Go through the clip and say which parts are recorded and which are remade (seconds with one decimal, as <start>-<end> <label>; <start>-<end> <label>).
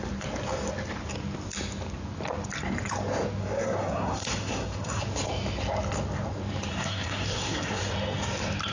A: 0.0-3.4 recorded; 3.4-5.0 remade; 5.0-6.7 recorded; 6.7-7.8 remade; 7.8-8.7 recorded